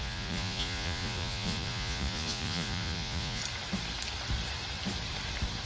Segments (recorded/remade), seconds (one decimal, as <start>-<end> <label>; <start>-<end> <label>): 0.0-3.4 remade; 3.4-5.7 recorded